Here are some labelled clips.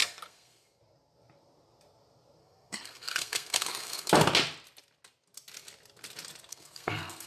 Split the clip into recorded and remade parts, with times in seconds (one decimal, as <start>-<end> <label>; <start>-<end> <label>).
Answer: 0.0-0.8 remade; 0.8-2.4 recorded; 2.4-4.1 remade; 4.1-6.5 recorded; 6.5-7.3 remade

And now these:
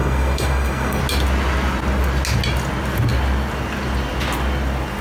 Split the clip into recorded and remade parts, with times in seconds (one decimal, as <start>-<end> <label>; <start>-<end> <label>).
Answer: 0.0-1.0 remade; 1.0-5.0 recorded

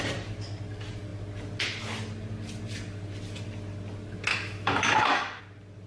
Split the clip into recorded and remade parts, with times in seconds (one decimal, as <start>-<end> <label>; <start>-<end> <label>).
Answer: 0.0-4.3 recorded; 4.3-5.4 remade; 5.4-5.9 recorded

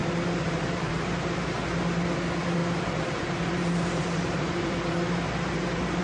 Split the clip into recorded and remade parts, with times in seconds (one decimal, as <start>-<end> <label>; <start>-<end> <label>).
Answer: 0.0-1.4 remade; 1.4-2.6 recorded; 2.6-6.0 remade

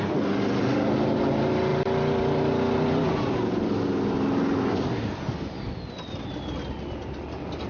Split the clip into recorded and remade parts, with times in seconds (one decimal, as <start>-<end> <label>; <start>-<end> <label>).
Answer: 0.0-7.7 recorded

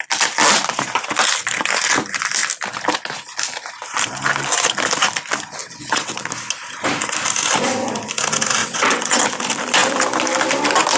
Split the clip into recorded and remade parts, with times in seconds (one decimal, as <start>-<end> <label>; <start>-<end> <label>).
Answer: 0.0-5.6 recorded; 5.6-6.2 remade; 6.2-8.6 recorded; 8.6-9.2 remade; 9.2-11.0 recorded

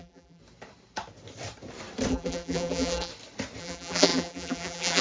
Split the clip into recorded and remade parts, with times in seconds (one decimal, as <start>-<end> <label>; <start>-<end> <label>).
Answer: 0.0-0.4 remade; 0.4-2.1 recorded; 2.1-3.1 remade; 3.1-3.6 recorded; 3.6-5.0 remade